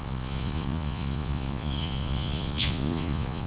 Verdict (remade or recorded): remade